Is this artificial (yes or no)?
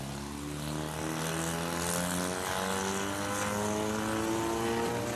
no